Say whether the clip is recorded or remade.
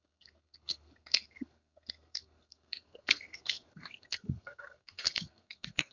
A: remade